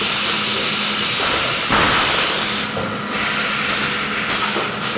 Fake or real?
real